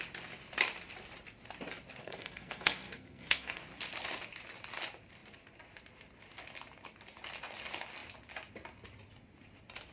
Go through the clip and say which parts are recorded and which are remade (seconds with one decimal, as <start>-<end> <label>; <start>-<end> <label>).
0.0-2.0 recorded; 2.0-3.6 remade; 3.6-9.9 recorded